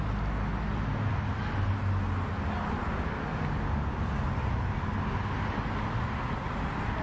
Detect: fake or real real